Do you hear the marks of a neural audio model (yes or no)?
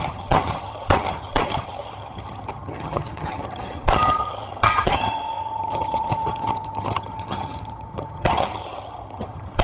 yes